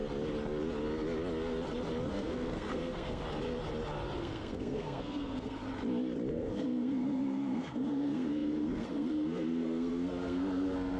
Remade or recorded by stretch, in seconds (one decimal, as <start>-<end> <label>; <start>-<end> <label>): 0.0-2.1 recorded; 2.1-3.2 remade; 3.2-4.2 recorded; 4.2-5.6 remade; 5.6-6.3 recorded; 6.3-11.0 remade